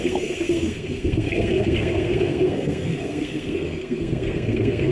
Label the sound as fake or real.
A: fake